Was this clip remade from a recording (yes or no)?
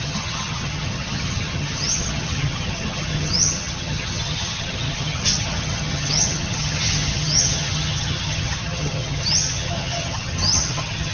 yes